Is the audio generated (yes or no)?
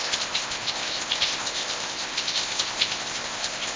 yes